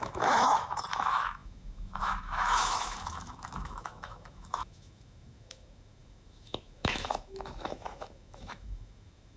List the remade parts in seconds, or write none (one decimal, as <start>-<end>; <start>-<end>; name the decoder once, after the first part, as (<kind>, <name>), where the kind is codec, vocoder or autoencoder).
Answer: 0.0-9.4 (autoencoder, DAC-VAE)